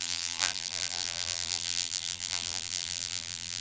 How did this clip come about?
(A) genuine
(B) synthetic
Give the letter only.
B